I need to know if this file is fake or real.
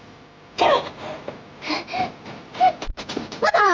real